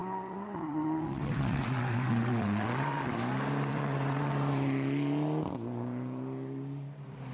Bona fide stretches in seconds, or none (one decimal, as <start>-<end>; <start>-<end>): 3.1-3.7; 4.3-7.3